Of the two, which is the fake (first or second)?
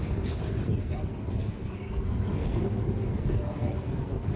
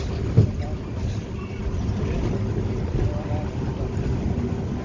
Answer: first